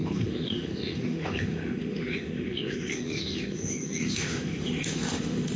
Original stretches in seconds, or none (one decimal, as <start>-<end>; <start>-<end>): none

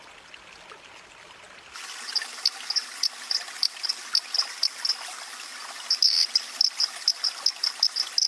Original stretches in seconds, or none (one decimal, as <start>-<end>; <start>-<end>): 0.0-8.3

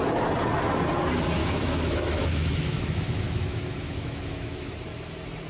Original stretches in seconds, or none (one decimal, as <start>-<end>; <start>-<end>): 0.0-1.4; 4.7-5.5